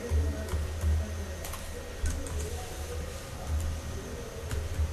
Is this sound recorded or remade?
recorded